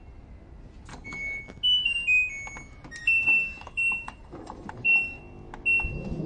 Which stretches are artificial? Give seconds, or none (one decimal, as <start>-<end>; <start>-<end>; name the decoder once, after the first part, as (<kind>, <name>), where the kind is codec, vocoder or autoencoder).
0.9-1.4 (codec, DAC); 3.0-5.2